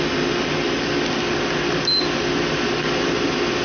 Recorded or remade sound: recorded